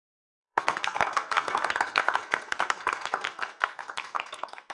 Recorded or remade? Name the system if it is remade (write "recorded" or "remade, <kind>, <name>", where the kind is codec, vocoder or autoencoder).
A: remade, codec, SNAC